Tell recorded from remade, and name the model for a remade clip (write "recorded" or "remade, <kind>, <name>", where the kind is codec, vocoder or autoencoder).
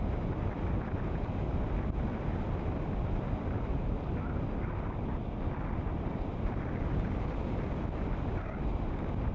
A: recorded